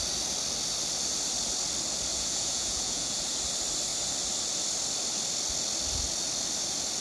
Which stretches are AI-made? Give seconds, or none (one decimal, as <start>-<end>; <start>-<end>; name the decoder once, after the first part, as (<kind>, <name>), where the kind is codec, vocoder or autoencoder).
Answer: 2.1-3.2 (vocoder, Vocos)